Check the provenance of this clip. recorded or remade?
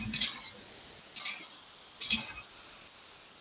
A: recorded